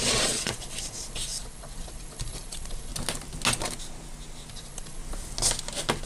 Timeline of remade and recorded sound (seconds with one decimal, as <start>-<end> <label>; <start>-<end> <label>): 0.0-2.9 remade; 2.9-4.5 recorded; 4.5-5.0 remade; 5.0-6.1 recorded